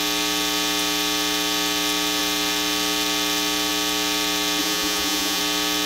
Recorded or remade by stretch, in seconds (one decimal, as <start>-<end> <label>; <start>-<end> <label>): 0.0-4.6 recorded; 4.6-5.4 remade; 5.4-5.9 recorded